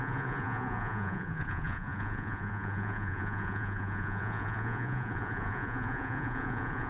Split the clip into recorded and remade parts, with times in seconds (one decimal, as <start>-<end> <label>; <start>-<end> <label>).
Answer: 0.0-6.9 remade